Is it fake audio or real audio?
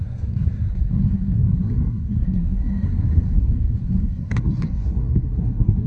fake